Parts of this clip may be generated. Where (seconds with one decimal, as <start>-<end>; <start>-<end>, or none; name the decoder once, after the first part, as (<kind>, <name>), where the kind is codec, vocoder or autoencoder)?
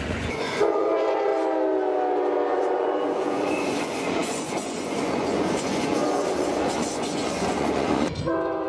0.0-1.3 (vocoder, Vocos); 2.5-8.7